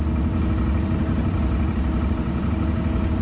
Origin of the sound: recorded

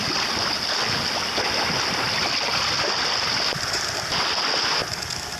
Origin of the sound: recorded